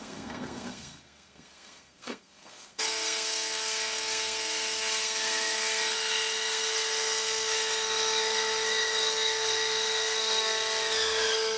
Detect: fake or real fake